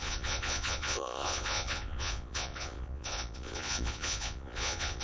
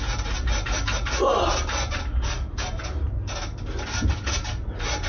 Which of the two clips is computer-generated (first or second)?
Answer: first